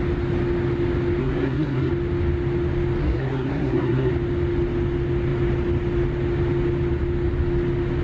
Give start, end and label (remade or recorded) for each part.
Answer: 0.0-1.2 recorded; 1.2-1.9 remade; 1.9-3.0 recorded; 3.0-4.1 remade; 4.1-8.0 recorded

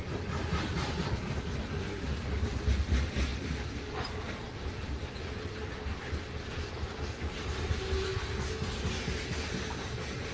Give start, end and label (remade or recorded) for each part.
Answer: 0.0-1.7 recorded; 1.7-2.2 remade; 2.2-10.3 recorded

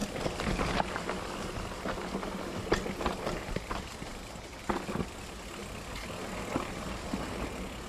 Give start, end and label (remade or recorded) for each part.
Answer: 0.0-7.9 recorded

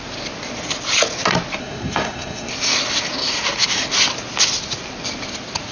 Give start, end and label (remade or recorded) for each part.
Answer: 0.0-1.6 recorded; 1.6-2.5 remade; 2.5-5.7 recorded

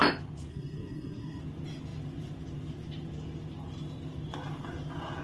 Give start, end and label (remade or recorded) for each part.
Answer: 0.0-0.5 recorded; 0.5-1.4 remade; 1.4-5.2 recorded